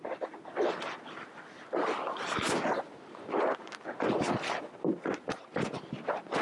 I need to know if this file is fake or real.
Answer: real